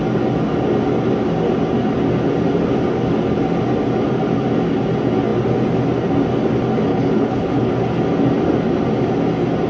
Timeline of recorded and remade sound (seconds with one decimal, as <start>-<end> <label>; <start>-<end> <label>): 0.0-6.9 recorded; 6.9-7.7 remade; 7.7-9.7 recorded